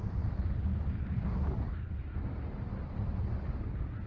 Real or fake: real